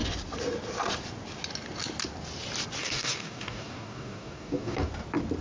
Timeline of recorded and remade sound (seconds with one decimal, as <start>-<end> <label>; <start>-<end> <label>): 0.0-2.8 recorded; 2.8-4.9 remade; 4.9-5.4 recorded